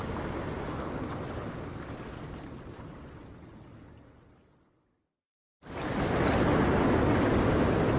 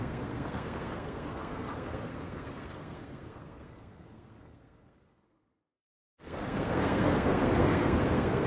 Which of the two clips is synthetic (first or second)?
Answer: second